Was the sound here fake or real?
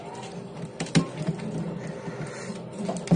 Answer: real